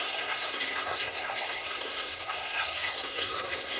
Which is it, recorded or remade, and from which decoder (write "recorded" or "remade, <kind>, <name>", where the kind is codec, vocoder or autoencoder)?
remade, codec, SNAC